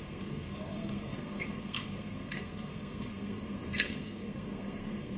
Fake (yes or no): yes